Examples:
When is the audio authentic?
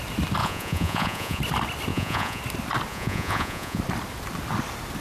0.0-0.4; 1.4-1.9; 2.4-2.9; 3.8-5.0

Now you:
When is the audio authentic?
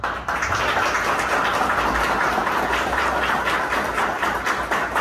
0.0-5.0